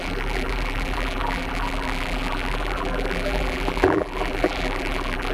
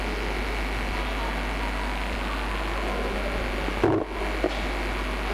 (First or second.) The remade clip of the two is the first